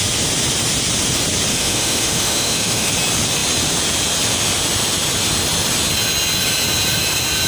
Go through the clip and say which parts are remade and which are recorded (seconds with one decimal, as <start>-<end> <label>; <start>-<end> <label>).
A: 0.0-1.5 recorded; 1.5-2.9 remade; 2.9-7.5 recorded